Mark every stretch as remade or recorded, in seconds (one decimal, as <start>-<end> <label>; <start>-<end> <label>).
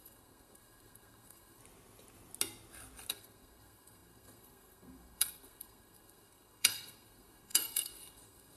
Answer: 0.0-1.6 remade; 1.6-3.1 recorded; 3.1-8.6 remade